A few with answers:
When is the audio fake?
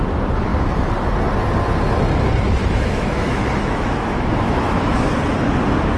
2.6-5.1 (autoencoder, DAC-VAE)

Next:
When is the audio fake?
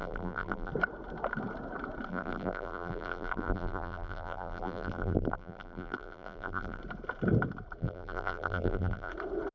0.0-0.7 (vocoder, BigVGAN v2); 2.1-6.8; 7.8-9.1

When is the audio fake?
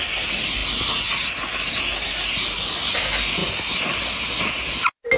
none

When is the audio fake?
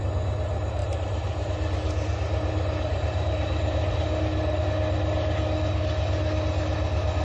0.8-4.6 (vocoder, BigVGAN v2)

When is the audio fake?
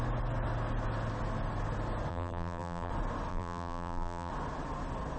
2.1-2.9 (vocoder, BigVGAN v2); 3.3-4.3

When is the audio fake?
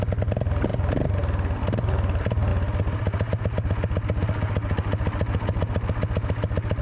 none